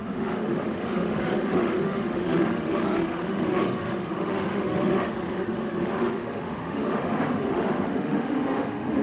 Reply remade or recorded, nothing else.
remade